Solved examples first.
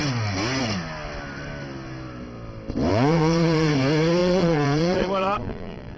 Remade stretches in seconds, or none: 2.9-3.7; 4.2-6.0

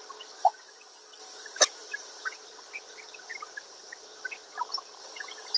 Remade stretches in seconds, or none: 1.8-3.8